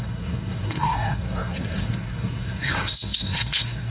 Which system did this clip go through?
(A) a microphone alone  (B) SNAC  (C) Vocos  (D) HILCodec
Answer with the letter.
B